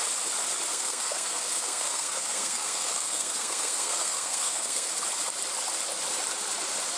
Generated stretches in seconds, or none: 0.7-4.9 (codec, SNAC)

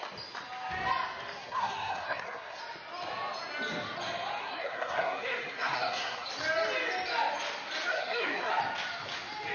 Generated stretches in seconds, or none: 1.4-2.6 (codec, SNAC); 4.4-6.3; 7.9-8.5

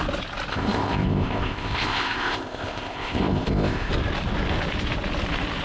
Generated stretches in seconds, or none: 0.5-3.9 (codec, ZipCodec)

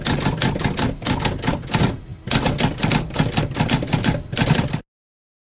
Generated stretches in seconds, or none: none

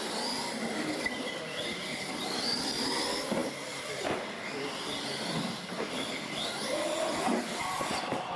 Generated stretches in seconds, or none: none

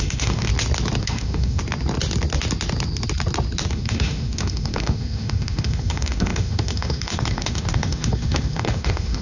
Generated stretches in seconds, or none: 0.0-0.5 (autoencoder, DAC-VAE); 1.0-1.6; 3.7-9.2

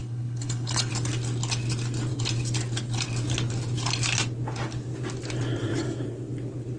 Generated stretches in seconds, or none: 0.0-0.9 (codec, HILCodec)

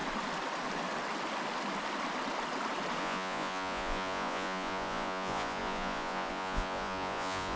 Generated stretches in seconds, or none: 3.0-7.6 (vocoder, Vocos)